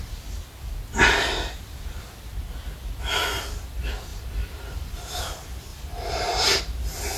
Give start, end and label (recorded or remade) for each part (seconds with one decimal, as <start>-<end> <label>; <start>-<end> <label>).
0.0-4.1 recorded; 4.1-5.2 remade; 5.2-5.7 recorded; 5.7-6.6 remade; 6.6-7.2 recorded